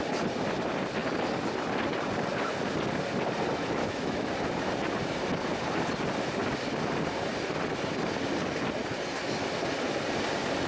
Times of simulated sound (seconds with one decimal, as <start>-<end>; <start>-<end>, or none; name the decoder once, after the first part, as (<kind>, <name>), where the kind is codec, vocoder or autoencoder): 3.8-4.3 (autoencoder, DAC-VAE)